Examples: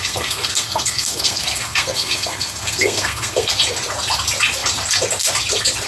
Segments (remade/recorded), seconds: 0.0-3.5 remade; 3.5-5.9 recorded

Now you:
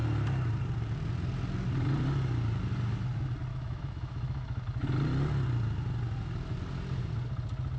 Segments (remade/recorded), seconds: 0.0-3.5 recorded; 3.5-4.6 remade; 4.6-7.8 recorded

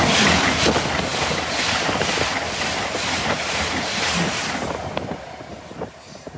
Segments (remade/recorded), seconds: 0.0-6.4 recorded

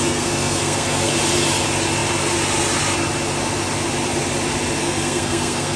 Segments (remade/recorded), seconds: 0.0-1.1 remade; 1.1-4.8 recorded; 4.8-5.8 remade

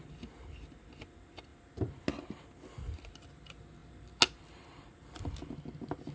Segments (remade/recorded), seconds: 0.0-6.1 recorded

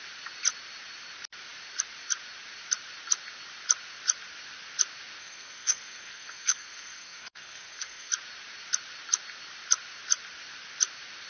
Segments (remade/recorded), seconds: 0.0-5.2 recorded; 5.2-8.1 remade; 8.1-11.3 recorded

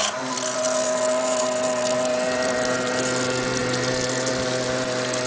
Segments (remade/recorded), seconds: 0.0-5.3 recorded